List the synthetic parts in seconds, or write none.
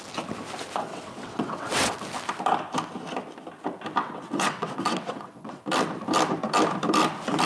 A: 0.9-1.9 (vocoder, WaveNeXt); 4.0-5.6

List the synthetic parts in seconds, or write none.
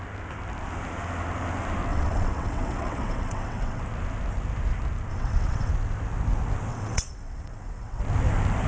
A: 1.9-3.8 (vocoder, WaveNeXt); 5.1-5.7; 6.7-8.0